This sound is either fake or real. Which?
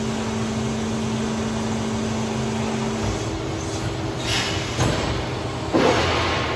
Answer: real